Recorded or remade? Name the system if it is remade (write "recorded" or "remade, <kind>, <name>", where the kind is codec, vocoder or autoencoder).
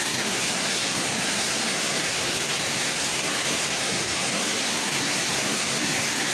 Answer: remade, codec, SNAC